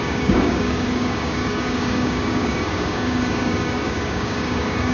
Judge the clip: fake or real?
fake